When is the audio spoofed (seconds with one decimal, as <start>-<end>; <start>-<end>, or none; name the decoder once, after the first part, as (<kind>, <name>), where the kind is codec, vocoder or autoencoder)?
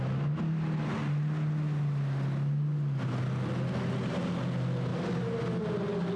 none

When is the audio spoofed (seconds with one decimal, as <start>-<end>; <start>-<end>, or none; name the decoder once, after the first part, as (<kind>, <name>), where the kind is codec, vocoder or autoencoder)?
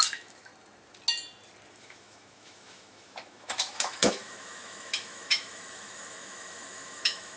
0.0-0.5 (autoencoder, DAC-VAE); 1.7-7.4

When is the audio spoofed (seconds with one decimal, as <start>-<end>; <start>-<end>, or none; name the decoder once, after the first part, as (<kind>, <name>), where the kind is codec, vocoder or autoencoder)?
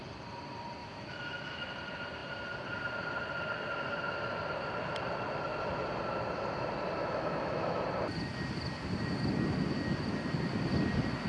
0.8-1.7 (autoencoder, DAC-VAE); 7.0-7.8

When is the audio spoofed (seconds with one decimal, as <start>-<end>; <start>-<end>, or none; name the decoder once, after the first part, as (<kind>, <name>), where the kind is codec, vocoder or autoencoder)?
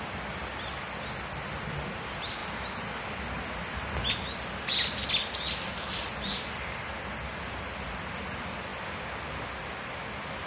none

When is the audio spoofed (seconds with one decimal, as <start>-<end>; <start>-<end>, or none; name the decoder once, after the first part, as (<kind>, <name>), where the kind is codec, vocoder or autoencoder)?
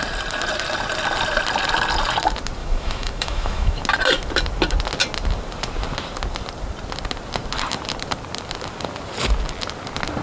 2.6-3.8 (autoencoder, DAC-VAE)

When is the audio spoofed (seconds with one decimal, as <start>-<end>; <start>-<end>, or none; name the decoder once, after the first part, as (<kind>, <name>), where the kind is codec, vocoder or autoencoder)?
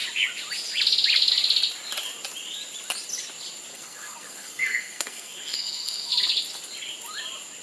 3.7-6.1 (codec, SNAC)